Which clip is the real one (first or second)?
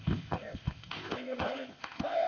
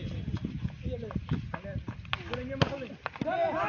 second